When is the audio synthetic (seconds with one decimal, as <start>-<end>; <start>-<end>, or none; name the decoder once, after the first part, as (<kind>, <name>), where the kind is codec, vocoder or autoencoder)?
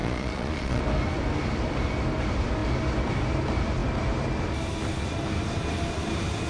0.0-0.8 (vocoder, Vocos)